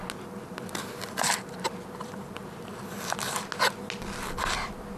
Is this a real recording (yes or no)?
yes